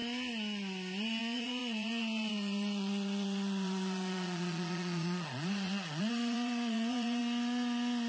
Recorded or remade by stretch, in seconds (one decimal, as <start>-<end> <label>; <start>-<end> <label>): 0.0-1.2 recorded; 1.2-7.2 remade; 7.2-8.1 recorded